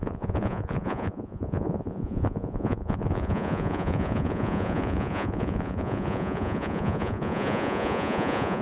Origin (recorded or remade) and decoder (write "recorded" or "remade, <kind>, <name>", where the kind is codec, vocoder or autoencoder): remade, vocoder, Vocos